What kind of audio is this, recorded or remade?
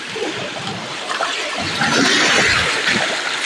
recorded